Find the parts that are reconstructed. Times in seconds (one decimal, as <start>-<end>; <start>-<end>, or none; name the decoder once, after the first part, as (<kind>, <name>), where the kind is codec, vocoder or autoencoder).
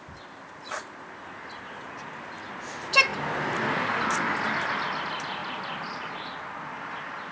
none